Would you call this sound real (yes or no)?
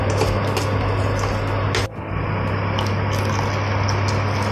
yes